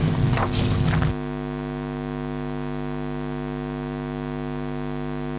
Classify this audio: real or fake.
real